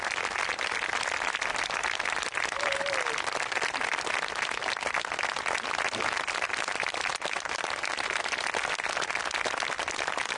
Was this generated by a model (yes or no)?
no